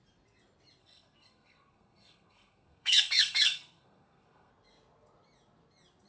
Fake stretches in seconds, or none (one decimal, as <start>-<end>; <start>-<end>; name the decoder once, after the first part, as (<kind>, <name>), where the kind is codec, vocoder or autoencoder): 0.8-4.5 (codec, SNAC)